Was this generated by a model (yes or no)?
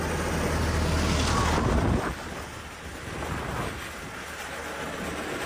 no